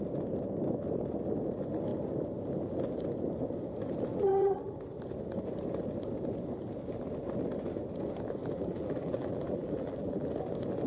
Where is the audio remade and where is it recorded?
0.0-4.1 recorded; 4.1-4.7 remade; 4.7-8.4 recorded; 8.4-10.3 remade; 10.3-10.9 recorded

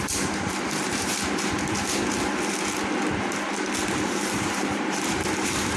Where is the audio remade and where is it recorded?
0.0-1.1 remade; 1.1-4.0 recorded; 4.0-5.8 remade

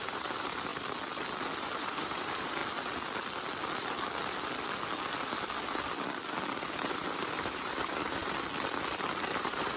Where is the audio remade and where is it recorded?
0.0-0.7 remade; 0.7-1.6 recorded; 1.6-2.6 remade; 2.6-6.9 recorded; 6.9-8.2 remade; 8.2-9.3 recorded; 9.3-9.8 remade

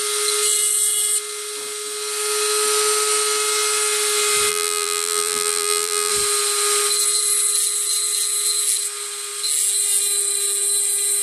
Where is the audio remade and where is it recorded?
0.0-4.5 recorded; 4.5-6.1 remade; 6.1-11.2 recorded

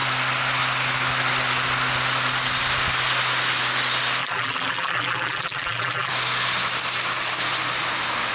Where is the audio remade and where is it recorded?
0.0-4.2 recorded; 4.2-6.1 remade; 6.1-8.3 recorded

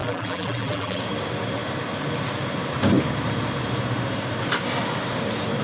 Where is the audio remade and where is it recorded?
0.0-1.0 remade; 1.0-5.6 recorded

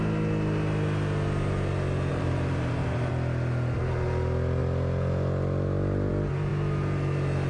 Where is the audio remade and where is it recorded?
0.0-2.1 recorded; 2.1-3.1 remade; 3.1-7.5 recorded